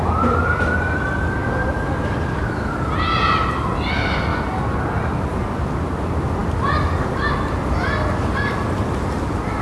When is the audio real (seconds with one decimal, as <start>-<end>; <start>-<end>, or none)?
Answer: 0.0-9.6